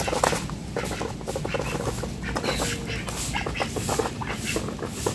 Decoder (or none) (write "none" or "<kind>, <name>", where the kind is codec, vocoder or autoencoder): none